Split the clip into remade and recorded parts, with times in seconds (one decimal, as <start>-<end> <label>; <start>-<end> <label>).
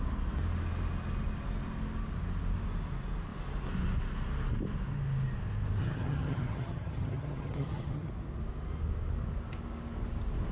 0.0-5.8 recorded; 5.8-8.1 remade; 8.1-10.5 recorded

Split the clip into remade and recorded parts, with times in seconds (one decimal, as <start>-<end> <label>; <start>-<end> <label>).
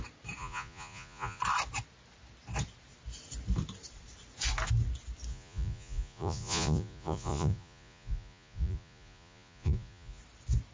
0.0-0.4 recorded; 0.4-1.4 remade; 1.4-5.3 recorded; 5.3-10.2 remade; 10.2-10.7 recorded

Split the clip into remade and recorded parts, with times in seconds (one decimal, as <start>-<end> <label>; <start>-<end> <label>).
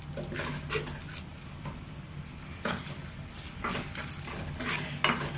0.0-5.4 recorded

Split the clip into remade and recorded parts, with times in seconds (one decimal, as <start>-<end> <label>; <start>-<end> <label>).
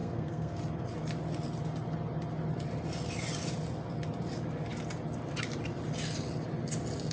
0.0-0.6 remade; 0.6-7.1 recorded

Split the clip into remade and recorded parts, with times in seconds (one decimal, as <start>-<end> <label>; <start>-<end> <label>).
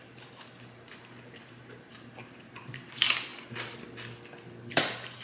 0.0-3.3 remade; 3.3-4.7 recorded; 4.7-5.2 remade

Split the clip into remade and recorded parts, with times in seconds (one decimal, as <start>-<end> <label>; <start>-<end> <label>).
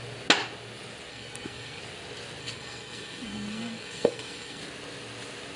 0.0-1.1 recorded; 1.1-1.8 remade; 1.8-2.4 recorded; 2.4-4.6 remade; 4.6-5.6 recorded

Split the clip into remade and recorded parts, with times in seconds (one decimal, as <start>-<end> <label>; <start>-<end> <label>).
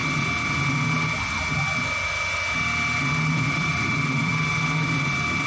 0.0-3.3 recorded; 3.3-4.3 remade; 4.3-5.5 recorded